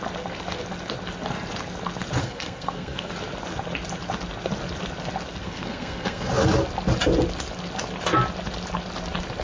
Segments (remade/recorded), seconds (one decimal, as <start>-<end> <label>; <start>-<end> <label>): 0.0-2.2 recorded; 2.2-3.1 remade; 3.1-5.4 recorded; 5.4-6.3 remade; 6.3-9.4 recorded